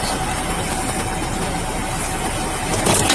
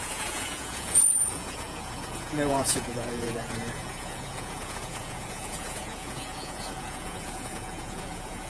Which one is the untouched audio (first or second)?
first